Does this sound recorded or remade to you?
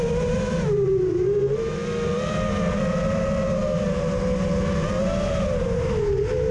recorded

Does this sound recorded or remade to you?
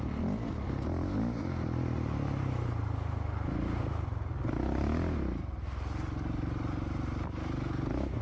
recorded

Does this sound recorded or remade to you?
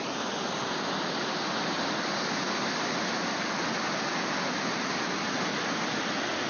recorded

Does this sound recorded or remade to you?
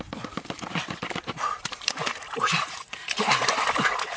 recorded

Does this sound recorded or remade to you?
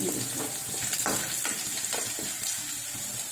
recorded